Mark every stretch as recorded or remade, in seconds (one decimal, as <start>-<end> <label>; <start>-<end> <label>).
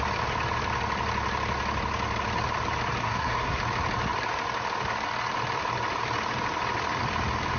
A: 0.0-3.0 recorded; 3.0-3.6 remade; 3.6-7.6 recorded